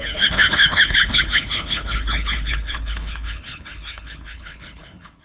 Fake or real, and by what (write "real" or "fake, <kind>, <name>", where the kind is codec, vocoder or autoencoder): fake, codec, HILCodec